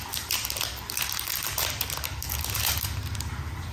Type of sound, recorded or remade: remade